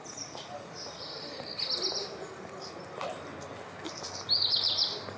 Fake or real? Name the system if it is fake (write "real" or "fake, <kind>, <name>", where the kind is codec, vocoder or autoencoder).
real